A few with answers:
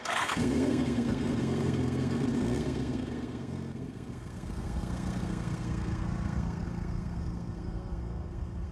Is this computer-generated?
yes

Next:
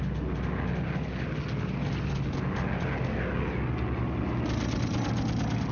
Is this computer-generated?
no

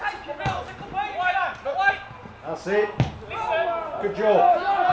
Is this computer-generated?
no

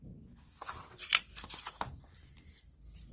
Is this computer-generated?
no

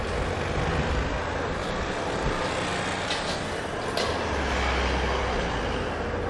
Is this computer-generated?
no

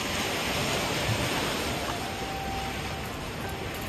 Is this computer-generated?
no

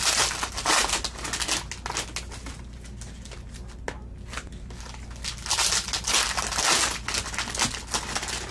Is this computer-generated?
no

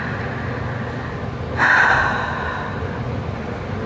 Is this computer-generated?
no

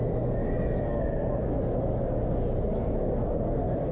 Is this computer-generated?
no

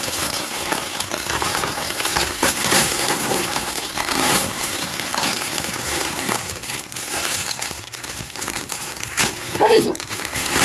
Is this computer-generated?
yes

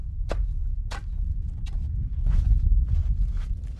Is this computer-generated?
no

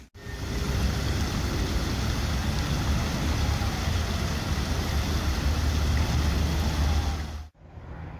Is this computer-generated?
no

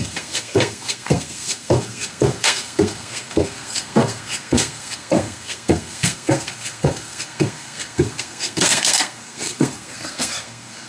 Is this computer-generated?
yes